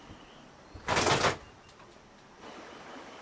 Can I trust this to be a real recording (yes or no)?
yes